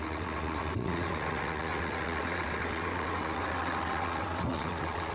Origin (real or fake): fake